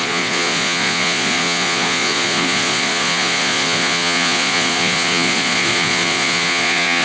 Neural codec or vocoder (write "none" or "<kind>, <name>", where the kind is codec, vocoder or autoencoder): vocoder, Vocos